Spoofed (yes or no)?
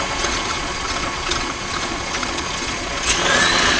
yes